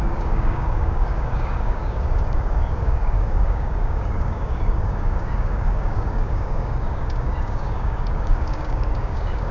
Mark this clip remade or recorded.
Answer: remade